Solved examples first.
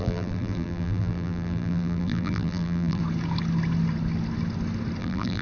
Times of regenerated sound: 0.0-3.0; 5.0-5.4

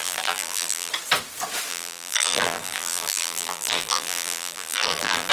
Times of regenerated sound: 0.0-0.9; 1.7-5.3